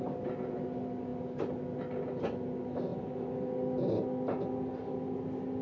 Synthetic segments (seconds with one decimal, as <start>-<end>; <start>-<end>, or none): none